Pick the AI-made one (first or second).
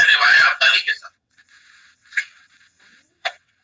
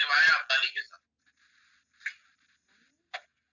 first